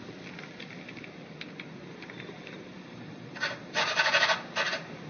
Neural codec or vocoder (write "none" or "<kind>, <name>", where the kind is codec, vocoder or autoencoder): none